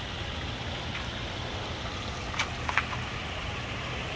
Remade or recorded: recorded